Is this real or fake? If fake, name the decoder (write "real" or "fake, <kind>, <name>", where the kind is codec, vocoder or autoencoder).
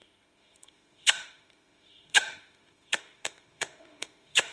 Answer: fake, autoencoder, DAC-VAE